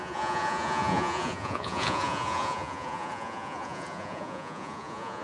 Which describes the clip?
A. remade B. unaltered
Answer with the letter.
A